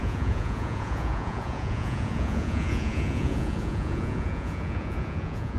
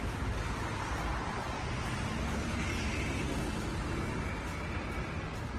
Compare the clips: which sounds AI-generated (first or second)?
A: first